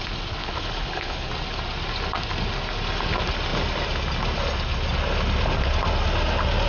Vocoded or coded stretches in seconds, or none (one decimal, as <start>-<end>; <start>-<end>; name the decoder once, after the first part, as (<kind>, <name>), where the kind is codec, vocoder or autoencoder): 0.4-1.3 (codec, HILCodec)

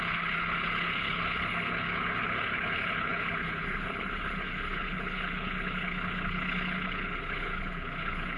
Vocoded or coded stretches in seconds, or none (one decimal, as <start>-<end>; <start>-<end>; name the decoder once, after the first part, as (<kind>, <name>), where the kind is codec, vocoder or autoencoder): 0.0-8.4 (codec, HILCodec)

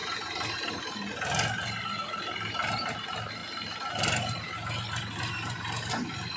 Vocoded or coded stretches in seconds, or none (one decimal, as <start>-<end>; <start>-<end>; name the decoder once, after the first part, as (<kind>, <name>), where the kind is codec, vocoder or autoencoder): none

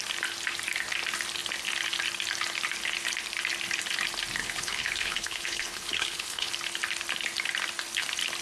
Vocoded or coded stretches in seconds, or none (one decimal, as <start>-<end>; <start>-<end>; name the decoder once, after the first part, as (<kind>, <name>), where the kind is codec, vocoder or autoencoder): 4.4-6.5 (codec, HILCodec)